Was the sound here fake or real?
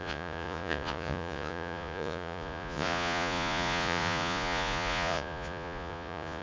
fake